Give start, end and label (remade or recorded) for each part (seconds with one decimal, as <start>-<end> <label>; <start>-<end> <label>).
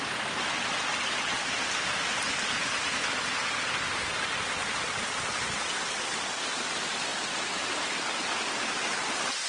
0.0-9.5 recorded